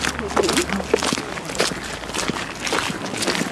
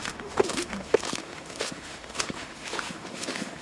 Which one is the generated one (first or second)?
second